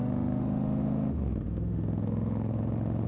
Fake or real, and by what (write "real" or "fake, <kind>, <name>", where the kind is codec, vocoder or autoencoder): fake, autoencoder, DAC-VAE